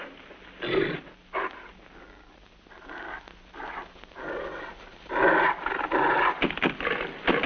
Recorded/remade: recorded